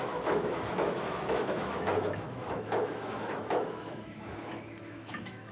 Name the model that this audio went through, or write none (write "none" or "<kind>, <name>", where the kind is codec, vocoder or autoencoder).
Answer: autoencoder, DAC-VAE